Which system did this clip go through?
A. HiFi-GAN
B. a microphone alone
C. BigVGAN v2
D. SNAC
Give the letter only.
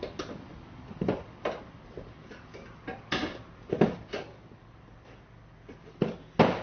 B